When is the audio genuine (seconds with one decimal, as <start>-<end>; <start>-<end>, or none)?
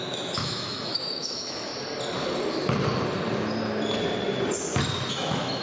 1.7-5.1